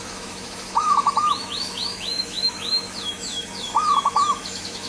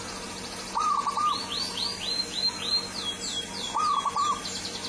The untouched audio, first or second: second